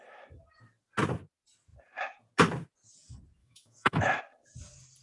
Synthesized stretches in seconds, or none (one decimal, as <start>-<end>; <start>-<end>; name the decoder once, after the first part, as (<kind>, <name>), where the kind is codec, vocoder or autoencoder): 3.4-4.2 (autoencoder, DAC-VAE)